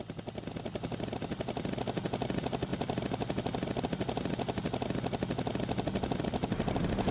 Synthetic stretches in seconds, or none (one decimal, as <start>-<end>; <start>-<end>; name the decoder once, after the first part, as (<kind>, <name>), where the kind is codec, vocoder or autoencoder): none